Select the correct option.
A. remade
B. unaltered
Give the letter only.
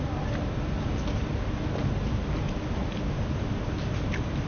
B